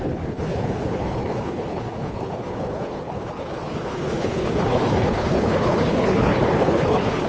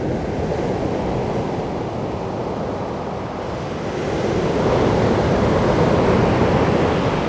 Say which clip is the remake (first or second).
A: first